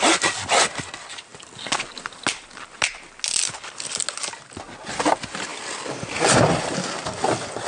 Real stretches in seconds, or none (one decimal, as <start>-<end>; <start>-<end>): 0.0-7.7